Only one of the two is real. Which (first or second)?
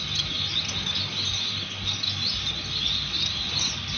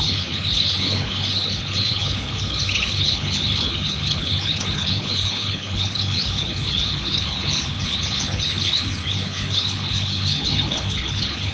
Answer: first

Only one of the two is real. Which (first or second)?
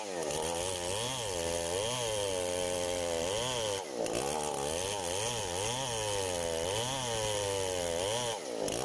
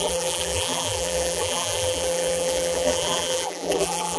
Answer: first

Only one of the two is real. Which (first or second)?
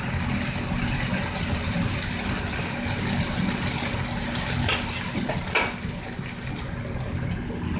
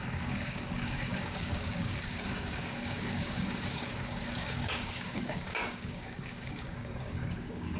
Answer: first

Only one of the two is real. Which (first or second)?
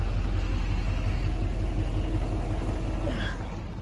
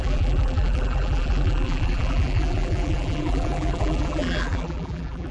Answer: first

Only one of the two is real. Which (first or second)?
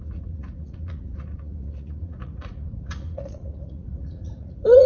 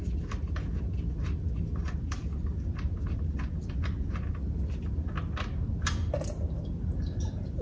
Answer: second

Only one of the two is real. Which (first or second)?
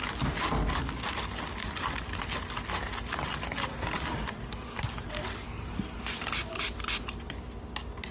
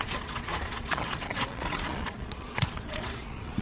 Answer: first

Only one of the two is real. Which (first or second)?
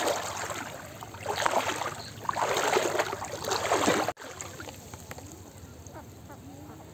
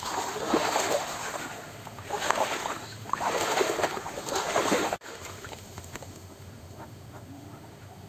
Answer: first